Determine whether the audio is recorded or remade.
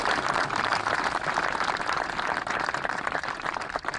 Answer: remade